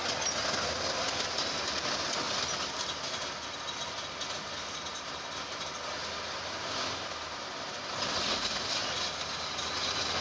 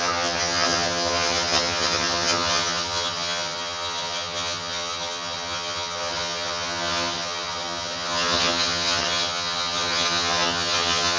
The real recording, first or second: first